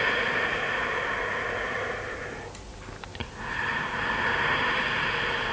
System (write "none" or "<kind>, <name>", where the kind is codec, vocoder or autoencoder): none